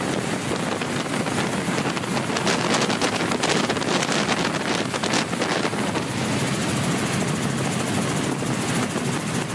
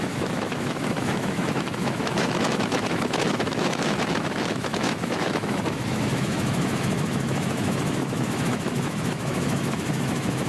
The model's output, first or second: second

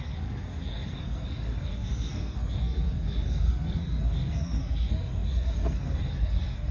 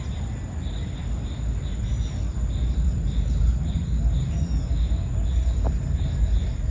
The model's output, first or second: first